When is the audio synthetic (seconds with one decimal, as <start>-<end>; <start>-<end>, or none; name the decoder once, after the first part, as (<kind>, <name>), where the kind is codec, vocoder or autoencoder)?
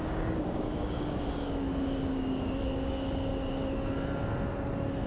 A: 0.0-3.3 (codec, DAC)